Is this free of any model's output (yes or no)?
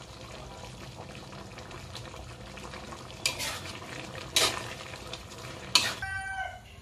yes